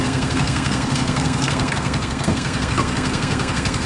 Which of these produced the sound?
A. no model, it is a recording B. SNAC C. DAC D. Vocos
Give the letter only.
B